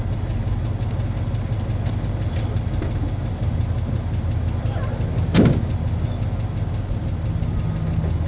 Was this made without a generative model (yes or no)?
yes